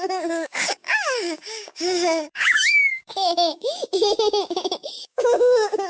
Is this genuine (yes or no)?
no